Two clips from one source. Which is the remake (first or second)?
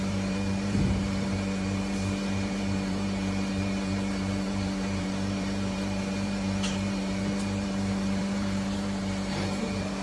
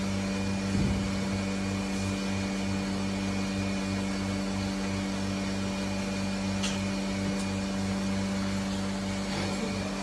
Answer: first